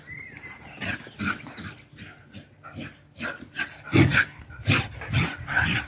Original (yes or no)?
yes